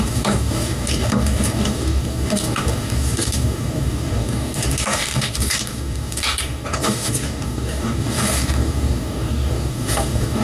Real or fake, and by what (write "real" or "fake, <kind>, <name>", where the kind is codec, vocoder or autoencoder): fake, codec, DAC